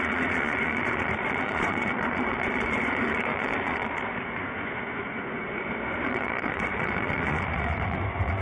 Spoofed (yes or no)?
yes